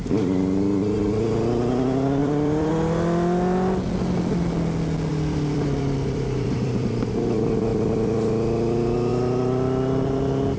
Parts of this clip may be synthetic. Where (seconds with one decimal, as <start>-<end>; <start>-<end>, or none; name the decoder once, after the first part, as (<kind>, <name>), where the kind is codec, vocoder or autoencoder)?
2.2-2.7 (vocoder, BigVGAN v2); 5.1-7.1; 7.7-8.3